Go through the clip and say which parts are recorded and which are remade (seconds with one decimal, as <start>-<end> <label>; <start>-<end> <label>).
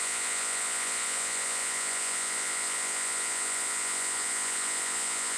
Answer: 0.0-5.4 remade